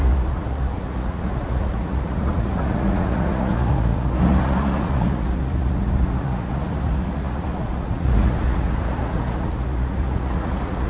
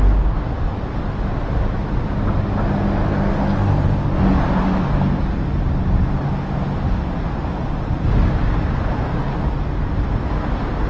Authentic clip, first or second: second